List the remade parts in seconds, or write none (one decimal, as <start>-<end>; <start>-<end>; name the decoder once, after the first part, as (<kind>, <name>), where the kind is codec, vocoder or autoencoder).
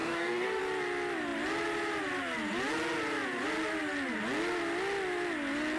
0.0-0.6 (codec, DAC)